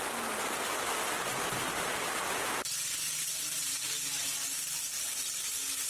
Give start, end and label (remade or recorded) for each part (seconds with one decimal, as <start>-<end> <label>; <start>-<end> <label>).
0.0-5.9 recorded